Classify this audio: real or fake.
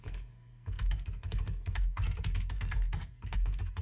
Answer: fake